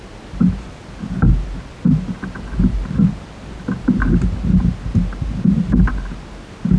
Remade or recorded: recorded